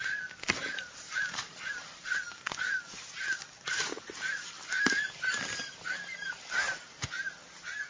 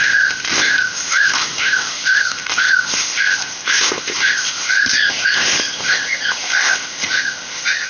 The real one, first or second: first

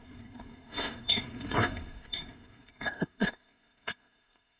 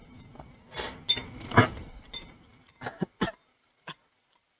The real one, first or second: second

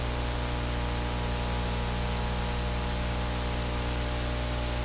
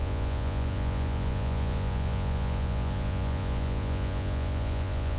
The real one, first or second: first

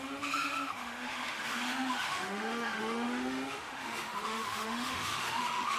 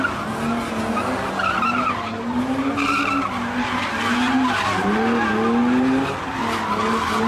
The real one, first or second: second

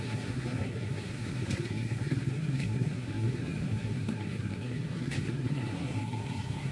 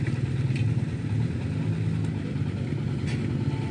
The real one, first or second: second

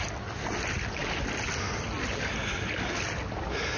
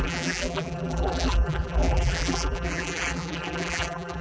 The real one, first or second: first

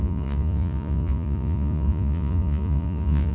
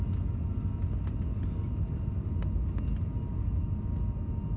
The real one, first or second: second